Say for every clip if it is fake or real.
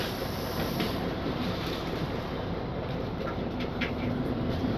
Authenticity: fake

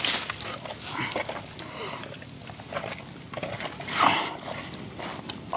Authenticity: real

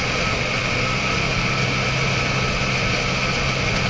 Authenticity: real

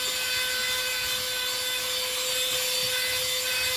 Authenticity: real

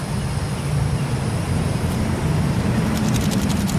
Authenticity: real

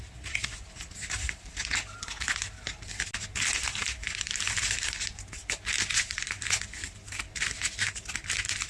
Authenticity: real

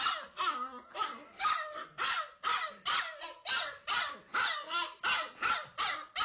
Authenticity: real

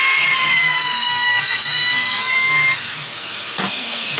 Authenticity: fake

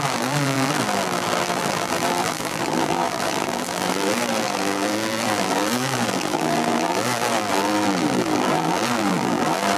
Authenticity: fake